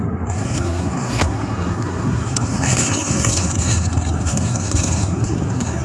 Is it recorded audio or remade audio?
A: remade